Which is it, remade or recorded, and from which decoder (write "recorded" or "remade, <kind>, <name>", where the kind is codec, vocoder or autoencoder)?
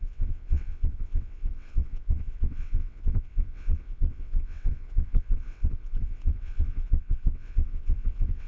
remade, vocoder, WaveNeXt